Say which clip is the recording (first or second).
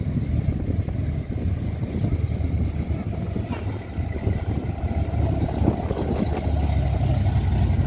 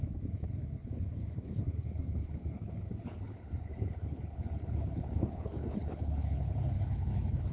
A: first